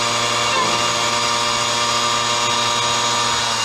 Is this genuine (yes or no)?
yes